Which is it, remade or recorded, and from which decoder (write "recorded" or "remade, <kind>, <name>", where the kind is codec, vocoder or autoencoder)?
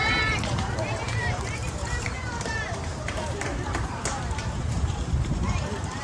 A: remade, vocoder, BigVGAN v2